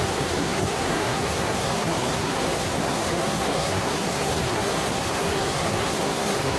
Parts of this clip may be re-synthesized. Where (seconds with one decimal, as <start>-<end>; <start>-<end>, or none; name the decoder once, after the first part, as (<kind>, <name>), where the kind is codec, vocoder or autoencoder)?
0.0-6.6 (codec, SNAC)

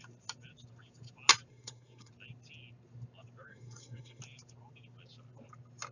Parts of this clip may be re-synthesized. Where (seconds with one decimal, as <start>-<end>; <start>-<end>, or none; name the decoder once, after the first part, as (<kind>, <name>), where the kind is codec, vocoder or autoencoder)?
1.5-2.1 (codec, SNAC); 3.5-4.2

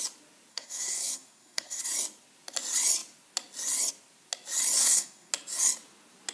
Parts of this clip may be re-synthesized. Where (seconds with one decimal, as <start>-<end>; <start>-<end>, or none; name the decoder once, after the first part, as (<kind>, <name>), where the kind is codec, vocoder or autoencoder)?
0.5-1.8 (codec, SNAC); 4.8-5.3

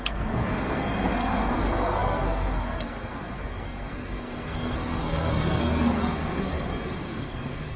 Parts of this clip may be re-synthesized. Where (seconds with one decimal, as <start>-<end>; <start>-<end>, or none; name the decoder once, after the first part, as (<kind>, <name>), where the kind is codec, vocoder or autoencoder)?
0.0-7.8 (codec, SNAC)

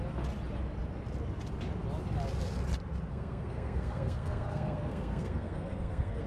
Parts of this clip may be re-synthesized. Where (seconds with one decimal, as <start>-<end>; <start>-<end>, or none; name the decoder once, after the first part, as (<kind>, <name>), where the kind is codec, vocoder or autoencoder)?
3.1-6.3 (codec, SNAC)

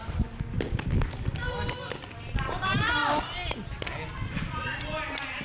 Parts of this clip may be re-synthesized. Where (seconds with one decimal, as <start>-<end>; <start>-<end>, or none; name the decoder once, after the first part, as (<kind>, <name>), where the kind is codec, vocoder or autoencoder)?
none

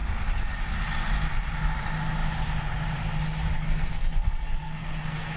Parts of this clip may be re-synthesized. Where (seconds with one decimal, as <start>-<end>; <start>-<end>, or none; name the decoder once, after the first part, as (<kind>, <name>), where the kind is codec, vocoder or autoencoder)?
3.6-5.4 (codec, SNAC)